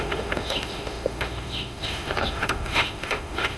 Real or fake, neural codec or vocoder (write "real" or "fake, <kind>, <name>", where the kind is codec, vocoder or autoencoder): fake, autoencoder, DAC-VAE